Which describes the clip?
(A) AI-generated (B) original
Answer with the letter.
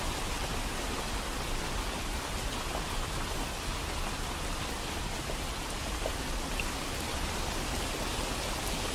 B